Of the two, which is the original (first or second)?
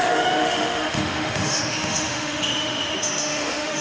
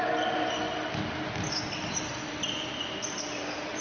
second